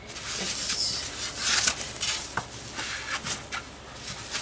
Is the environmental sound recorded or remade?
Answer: recorded